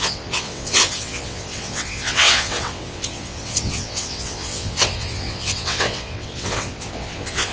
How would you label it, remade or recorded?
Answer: remade